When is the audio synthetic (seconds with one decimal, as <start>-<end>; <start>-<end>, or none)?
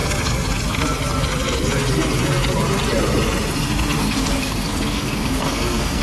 4.0-6.0